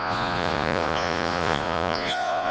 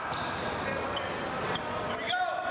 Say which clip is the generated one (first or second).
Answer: first